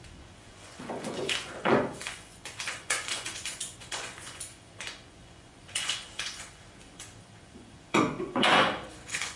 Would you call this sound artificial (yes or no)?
yes